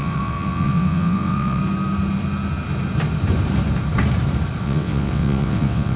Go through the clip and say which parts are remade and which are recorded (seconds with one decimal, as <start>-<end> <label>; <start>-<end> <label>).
0.0-1.6 remade; 1.6-4.6 recorded; 4.6-6.0 remade